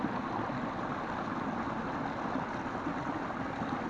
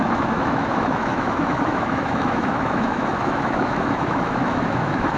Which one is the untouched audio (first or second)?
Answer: first